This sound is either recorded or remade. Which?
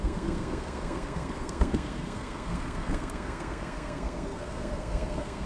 remade